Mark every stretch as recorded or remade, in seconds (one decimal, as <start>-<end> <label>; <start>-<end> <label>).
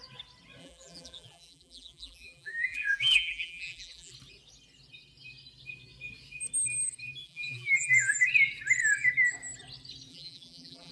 0.0-0.6 recorded; 0.6-4.1 remade; 4.1-7.2 recorded; 7.2-8.3 remade; 8.3-10.1 recorded; 10.1-10.9 remade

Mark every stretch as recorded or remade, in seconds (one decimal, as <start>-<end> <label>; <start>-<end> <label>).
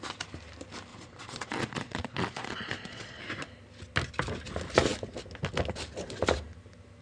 0.0-0.9 recorded; 0.9-3.2 remade; 3.2-7.0 recorded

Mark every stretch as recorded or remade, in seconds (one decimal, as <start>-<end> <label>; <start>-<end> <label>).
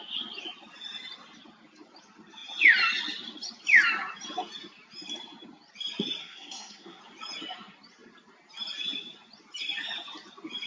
0.0-6.2 recorded; 6.2-7.0 remade; 7.0-10.7 recorded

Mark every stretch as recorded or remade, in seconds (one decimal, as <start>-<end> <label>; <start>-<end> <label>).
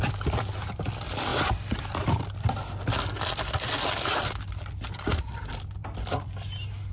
0.0-6.9 recorded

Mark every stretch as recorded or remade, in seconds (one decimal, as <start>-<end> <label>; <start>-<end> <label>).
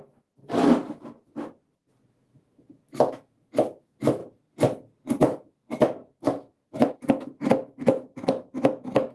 0.0-0.4 remade; 0.4-2.1 recorded; 2.1-4.2 remade; 4.2-5.2 recorded; 5.2-9.1 remade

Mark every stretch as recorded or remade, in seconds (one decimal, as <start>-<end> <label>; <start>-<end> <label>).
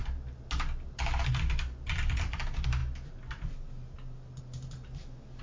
0.0-5.4 recorded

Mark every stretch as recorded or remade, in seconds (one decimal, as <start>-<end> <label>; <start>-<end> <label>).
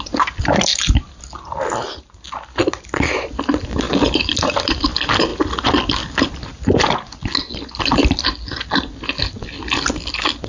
0.0-10.5 recorded